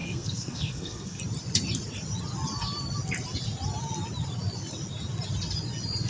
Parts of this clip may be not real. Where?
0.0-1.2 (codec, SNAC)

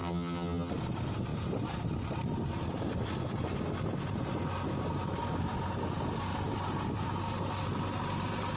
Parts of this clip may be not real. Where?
0.0-0.7 (vocoder, HiFi-GAN)

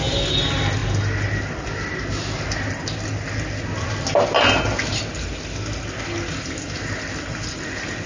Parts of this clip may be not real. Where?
none

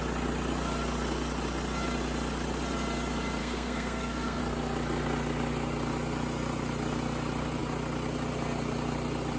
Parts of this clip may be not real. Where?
3.4-4.4 (codec, SNAC)

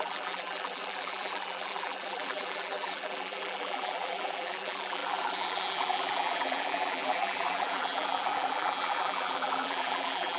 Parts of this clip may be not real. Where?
0.0-10.4 (vocoder, BigVGAN v2)

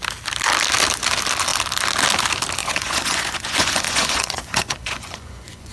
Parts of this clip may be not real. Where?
2.6-5.7 (vocoder, Vocos)